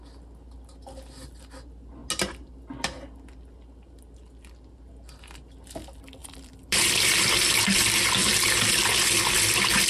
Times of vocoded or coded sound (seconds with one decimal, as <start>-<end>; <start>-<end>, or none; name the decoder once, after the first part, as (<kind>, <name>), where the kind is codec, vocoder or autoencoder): 6.2-7.3 (vocoder, BigVGAN v2)

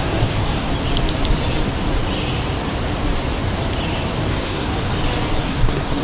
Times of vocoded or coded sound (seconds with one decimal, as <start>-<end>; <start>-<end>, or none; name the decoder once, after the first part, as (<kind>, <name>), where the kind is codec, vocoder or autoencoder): 0.0-0.7 (codec, SNAC); 4.3-4.7; 5.4-6.0

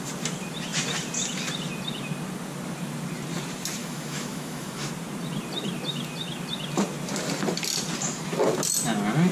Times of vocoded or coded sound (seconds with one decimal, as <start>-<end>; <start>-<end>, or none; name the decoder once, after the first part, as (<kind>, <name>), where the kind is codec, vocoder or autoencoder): 3.8-4.9 (autoencoder, DAC-VAE)

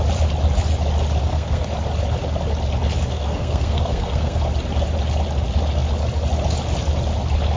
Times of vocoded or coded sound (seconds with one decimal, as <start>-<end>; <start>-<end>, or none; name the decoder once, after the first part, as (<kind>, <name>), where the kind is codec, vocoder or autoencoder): 1.2-1.7 (codec, SNAC); 3.1-4.4

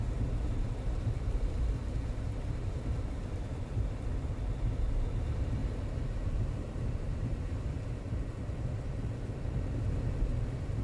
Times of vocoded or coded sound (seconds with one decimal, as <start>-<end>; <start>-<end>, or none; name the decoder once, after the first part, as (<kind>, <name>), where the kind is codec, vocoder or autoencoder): 0.0-10.3 (vocoder, BigVGAN v2)

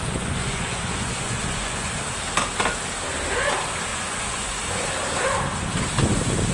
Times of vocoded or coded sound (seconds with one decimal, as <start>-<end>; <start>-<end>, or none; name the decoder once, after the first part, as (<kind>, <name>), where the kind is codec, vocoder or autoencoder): 0.0-1.9 (vocoder, Vocos); 3.9-4.6